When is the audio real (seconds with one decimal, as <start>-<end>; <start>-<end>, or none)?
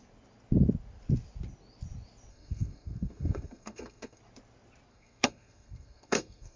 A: 0.0-2.3; 4.2-4.9